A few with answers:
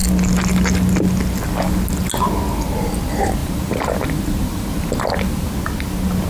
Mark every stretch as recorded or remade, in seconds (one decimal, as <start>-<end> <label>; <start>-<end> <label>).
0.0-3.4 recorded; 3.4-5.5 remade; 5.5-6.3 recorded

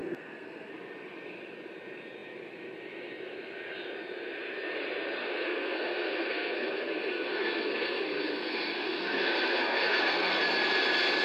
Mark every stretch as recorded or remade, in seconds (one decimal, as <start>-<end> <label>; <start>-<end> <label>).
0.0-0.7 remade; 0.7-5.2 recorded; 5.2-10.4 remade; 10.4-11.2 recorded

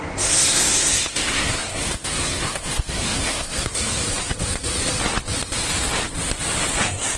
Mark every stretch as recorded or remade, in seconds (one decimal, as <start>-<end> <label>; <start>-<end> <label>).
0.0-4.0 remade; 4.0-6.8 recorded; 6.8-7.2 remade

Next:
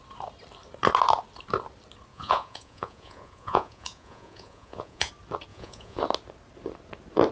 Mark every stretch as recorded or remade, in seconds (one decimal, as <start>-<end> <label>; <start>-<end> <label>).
0.0-2.1 recorded; 2.1-5.1 remade; 5.1-5.5 recorded; 5.5-6.0 remade; 6.0-7.3 recorded

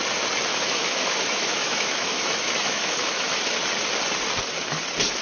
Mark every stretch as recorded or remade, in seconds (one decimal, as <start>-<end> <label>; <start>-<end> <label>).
0.0-0.5 recorded; 0.5-3.6 remade; 3.6-5.2 recorded